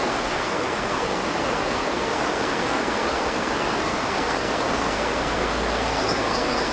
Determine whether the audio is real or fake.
fake